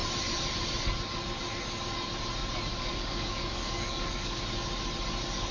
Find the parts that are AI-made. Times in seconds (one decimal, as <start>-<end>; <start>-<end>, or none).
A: 2.7-4.4